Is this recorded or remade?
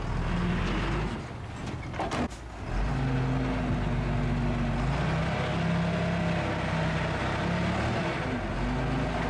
recorded